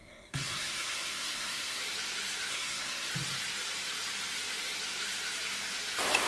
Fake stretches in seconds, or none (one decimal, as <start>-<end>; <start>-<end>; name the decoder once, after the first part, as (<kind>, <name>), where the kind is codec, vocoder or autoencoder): 0.0-1.8 (codec, SNAC); 2.5-3.1